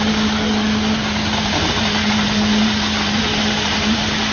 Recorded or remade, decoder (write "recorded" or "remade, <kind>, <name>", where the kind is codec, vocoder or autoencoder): recorded